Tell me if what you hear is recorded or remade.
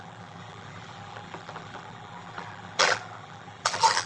remade